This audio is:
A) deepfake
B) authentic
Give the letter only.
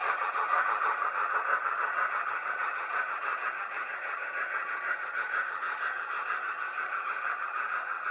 A